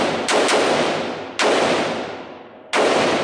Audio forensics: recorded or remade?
recorded